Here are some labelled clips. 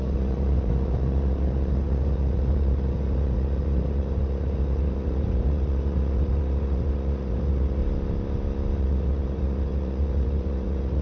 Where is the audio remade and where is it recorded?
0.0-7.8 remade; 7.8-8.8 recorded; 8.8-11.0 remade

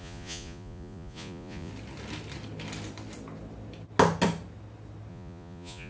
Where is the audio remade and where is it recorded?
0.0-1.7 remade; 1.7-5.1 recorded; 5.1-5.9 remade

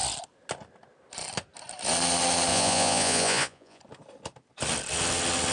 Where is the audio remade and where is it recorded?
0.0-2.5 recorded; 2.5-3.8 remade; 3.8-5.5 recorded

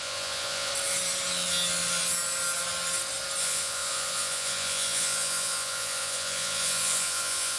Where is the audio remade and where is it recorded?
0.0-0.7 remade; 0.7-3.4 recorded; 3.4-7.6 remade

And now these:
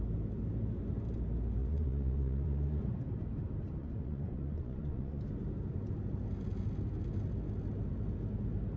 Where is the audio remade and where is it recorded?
0.0-1.6 recorded; 1.6-2.8 remade; 2.8-3.8 recorded; 3.8-5.2 remade; 5.2-8.8 recorded

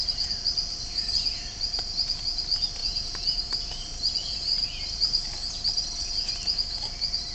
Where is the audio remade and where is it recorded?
0.0-2.8 recorded; 2.8-3.4 remade; 3.4-7.3 recorded